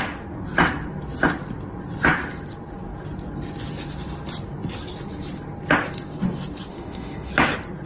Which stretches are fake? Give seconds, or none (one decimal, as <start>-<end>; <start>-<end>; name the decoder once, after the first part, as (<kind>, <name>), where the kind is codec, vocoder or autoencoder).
6.7-7.3 (autoencoder, DAC-VAE)